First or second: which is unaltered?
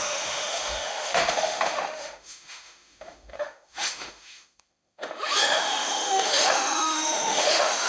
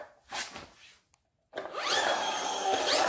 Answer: second